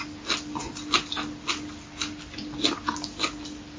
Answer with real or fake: real